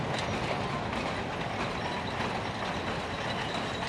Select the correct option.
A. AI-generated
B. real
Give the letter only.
B